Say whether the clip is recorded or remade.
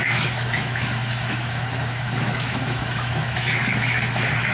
remade